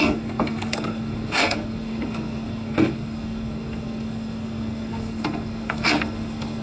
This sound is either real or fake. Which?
fake